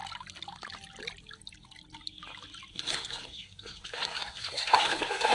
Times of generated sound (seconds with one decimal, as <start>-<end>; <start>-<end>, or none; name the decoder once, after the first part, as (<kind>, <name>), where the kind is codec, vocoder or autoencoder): 2.7-5.3 (codec, SNAC)